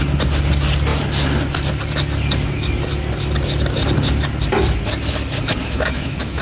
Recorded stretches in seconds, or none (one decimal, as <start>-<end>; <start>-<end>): 0.0-5.6